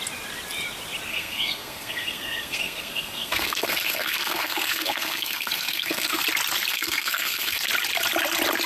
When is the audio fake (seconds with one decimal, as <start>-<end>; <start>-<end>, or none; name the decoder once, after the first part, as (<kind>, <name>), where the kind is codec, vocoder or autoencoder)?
1.1-6.2 (codec, SNAC); 6.7-7.6